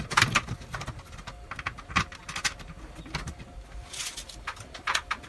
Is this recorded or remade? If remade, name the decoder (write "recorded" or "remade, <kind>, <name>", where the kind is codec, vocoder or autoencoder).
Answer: recorded